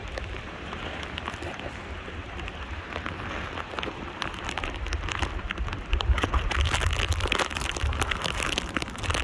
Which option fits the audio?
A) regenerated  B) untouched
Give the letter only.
B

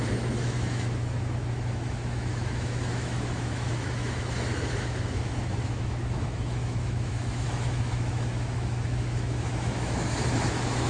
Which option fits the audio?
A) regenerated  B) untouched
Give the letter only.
A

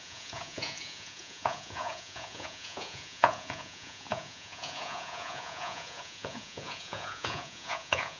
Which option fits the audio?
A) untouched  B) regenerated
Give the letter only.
B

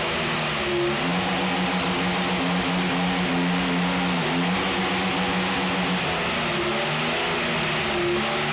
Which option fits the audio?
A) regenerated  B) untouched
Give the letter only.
B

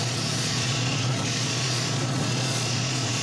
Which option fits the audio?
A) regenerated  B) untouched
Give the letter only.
A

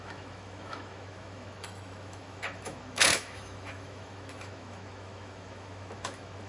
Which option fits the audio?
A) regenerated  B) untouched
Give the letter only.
A